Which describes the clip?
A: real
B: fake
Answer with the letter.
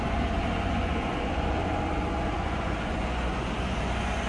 B